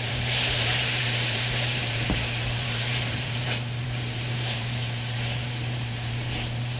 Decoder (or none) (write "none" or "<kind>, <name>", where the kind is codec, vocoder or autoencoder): vocoder, BigVGAN v2